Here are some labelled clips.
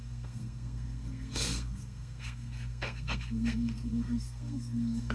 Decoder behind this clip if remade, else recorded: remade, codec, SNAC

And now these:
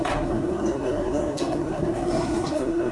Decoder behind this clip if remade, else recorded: remade, codec, SNAC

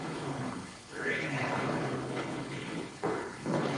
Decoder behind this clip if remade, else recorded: remade, codec, HILCodec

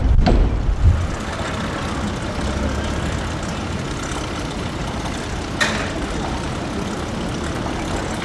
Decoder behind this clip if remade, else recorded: remade, vocoder, BigVGAN v2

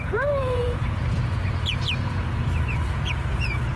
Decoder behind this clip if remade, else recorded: remade, vocoder, Vocos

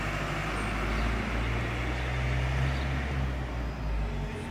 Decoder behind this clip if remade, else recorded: recorded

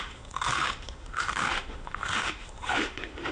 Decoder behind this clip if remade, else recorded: remade, autoencoder, DAC-VAE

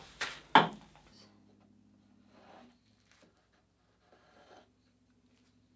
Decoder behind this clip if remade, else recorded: recorded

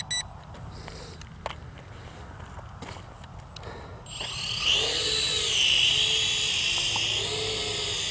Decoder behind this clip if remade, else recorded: recorded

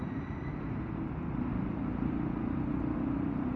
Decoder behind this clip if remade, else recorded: recorded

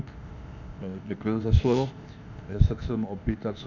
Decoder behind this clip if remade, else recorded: remade, codec, ZipCodec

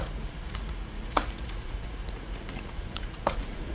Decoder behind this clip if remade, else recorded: remade, vocoder, Vocos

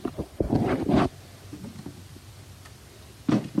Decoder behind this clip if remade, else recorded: remade, vocoder, BigVGAN v2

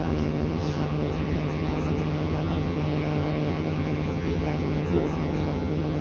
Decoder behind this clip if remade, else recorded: remade, vocoder, HiFi-GAN